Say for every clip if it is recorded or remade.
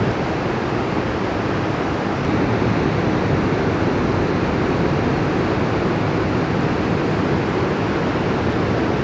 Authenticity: recorded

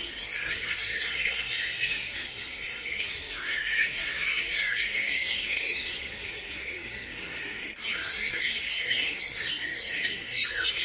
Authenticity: remade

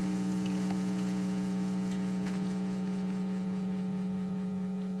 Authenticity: remade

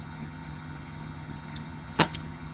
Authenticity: remade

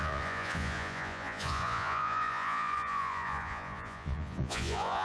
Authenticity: remade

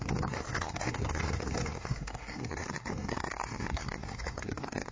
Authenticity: remade